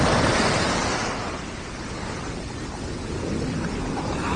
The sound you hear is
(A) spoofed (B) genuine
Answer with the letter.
B